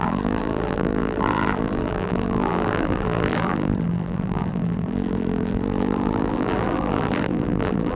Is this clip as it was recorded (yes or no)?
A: no